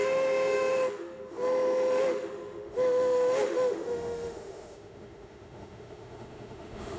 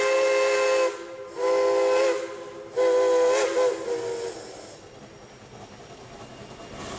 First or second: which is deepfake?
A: first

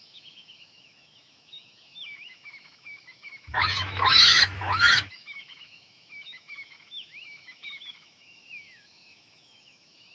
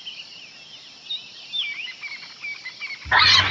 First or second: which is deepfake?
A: first